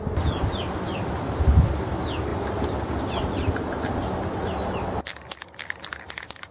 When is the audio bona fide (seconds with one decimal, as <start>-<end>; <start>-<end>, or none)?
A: 0.0-6.5